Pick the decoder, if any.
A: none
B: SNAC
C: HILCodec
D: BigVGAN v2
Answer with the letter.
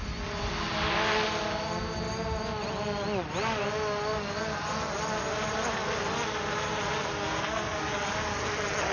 A